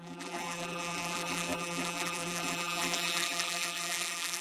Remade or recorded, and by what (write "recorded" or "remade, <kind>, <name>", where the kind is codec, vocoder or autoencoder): remade, vocoder, BigVGAN v2